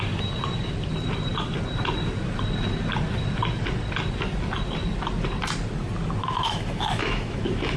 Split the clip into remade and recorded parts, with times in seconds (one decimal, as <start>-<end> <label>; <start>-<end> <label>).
0.0-6.2 recorded; 6.2-7.8 remade